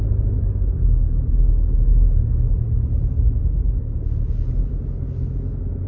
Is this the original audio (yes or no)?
yes